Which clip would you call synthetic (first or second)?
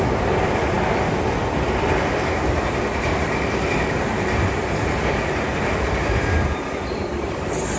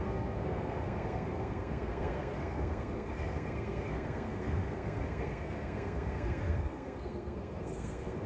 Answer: second